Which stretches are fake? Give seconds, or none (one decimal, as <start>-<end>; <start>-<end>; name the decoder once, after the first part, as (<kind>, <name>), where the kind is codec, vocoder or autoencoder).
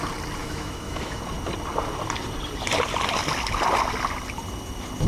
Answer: 0.4-1.2 (autoencoder, DAC-VAE)